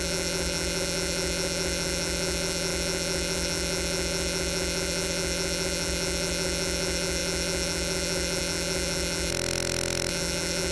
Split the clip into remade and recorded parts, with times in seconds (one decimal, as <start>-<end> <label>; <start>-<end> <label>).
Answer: 0.0-9.3 remade; 9.3-10.1 recorded; 10.1-10.7 remade